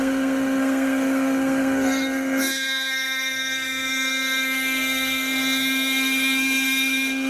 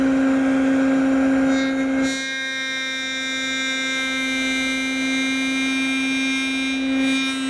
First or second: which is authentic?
second